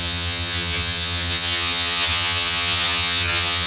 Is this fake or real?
fake